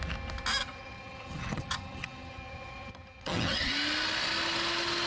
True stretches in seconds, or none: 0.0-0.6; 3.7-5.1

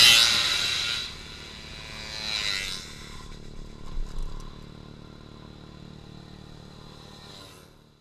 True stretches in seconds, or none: 0.0-8.0

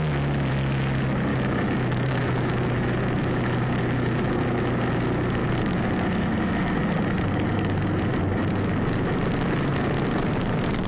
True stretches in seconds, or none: 0.0-1.3; 3.2-5.4; 6.5-10.9

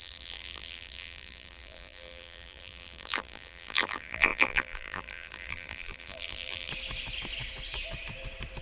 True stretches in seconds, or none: 6.7-8.6

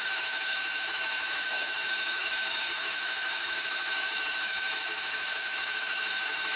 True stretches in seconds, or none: none

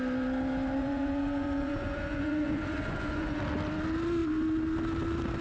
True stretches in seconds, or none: 0.0-0.8; 3.4-5.4

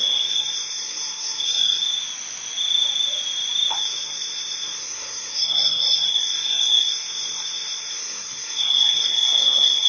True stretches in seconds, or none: 1.8-3.7

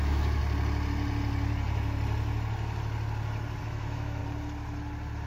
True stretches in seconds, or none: 0.4-3.6; 4.2-5.3